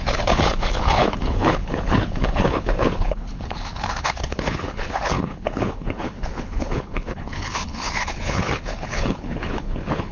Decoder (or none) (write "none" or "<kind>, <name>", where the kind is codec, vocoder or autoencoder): codec, HILCodec